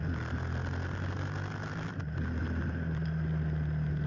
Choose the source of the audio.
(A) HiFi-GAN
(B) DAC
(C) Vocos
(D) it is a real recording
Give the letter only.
D